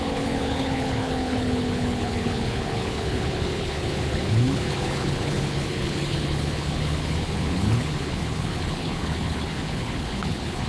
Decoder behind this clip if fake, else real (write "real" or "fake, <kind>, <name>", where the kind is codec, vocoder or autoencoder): fake, codec, HILCodec